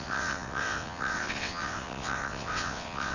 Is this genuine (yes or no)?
no